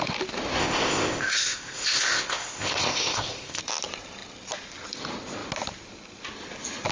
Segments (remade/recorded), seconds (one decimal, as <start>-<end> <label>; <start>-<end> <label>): 0.0-0.6 recorded; 0.6-3.6 remade; 3.6-6.9 recorded